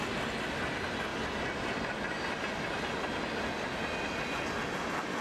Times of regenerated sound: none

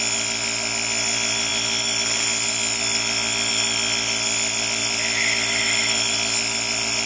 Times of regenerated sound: none